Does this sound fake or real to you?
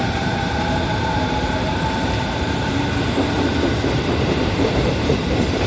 fake